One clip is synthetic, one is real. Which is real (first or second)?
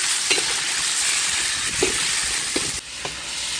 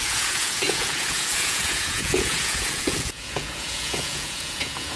first